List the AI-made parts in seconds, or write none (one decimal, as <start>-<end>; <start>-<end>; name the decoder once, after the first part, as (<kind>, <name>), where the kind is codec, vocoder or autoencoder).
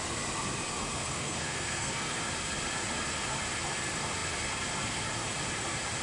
0.8-2.2 (codec, SNAC)